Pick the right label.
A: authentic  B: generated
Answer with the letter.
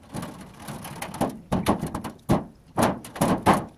A